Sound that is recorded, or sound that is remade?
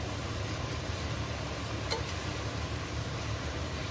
remade